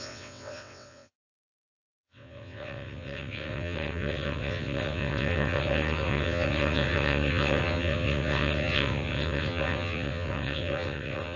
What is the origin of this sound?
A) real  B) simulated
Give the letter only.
B